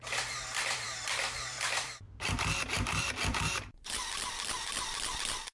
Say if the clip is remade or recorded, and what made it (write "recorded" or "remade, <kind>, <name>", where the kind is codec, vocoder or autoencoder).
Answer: remade, vocoder, BigVGAN v2